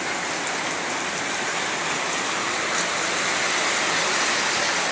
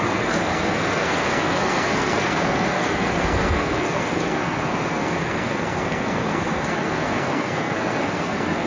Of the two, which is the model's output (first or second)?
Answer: second